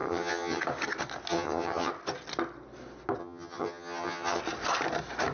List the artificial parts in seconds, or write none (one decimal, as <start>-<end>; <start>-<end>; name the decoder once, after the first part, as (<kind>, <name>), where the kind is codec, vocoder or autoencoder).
0.0-0.6 (vocoder, HiFi-GAN); 1.3-1.9; 3.2-4.4